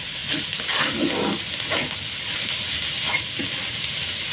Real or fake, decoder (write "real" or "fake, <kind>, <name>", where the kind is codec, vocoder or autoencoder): real